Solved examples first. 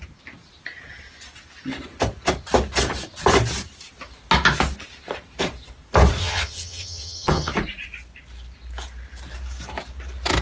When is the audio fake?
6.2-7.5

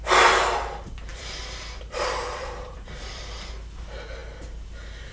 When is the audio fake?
1.1-3.2

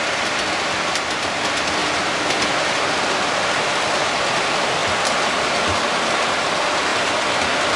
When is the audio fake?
none

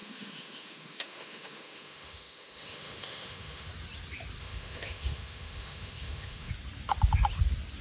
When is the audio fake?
0.0-3.7; 4.4-6.5

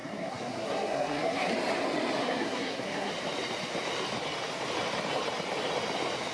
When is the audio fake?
0.0-1.5; 2.2-3.1

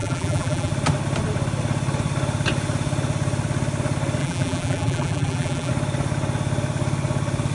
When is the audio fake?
0.0-0.7; 4.2-5.7